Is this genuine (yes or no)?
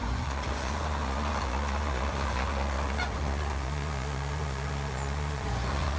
no